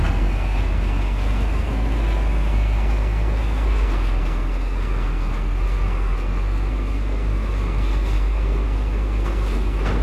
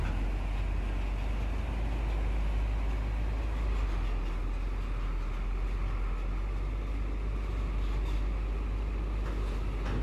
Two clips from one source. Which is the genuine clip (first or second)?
second